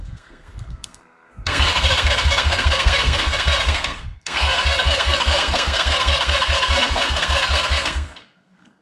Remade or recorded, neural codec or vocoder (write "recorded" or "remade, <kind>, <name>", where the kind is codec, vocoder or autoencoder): remade, codec, SNAC